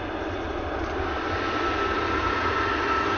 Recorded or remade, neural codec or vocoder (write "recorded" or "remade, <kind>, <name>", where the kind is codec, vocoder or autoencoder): recorded